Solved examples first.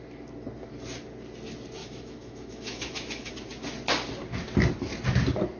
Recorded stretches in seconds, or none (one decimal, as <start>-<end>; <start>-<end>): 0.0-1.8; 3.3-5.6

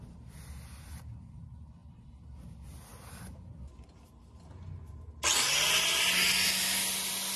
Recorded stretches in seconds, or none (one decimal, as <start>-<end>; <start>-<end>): 0.0-7.4

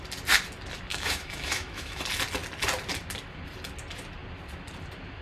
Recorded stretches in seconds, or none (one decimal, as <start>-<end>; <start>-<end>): 0.0-0.9; 2.0-5.2

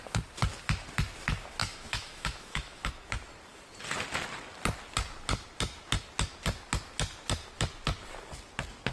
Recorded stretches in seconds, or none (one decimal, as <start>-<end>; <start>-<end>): 0.0-1.6; 2.9-8.9